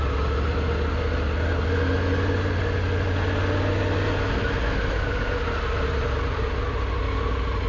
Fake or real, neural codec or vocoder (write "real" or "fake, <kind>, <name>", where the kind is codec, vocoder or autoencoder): real